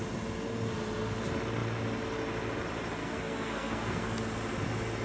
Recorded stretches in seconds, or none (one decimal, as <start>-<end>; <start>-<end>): 0.0-3.0; 4.2-5.0